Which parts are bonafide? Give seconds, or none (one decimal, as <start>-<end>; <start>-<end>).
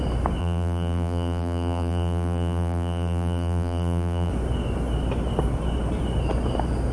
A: 0.0-0.4; 4.3-6.9